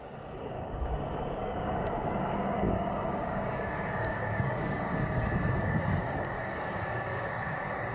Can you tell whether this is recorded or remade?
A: remade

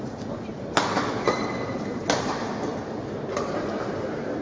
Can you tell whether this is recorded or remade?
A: remade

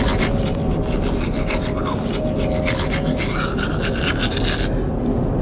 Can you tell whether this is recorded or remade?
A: recorded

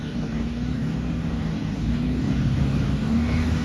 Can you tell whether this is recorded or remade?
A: remade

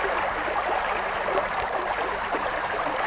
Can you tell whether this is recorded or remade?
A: recorded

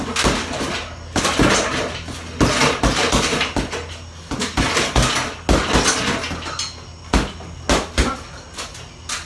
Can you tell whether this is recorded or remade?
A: recorded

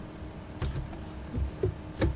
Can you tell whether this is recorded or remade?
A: recorded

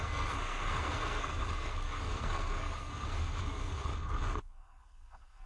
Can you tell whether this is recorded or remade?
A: remade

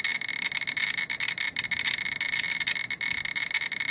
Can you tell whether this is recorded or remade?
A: recorded